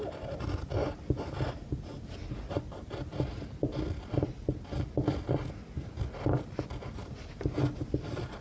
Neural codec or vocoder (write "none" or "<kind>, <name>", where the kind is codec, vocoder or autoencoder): none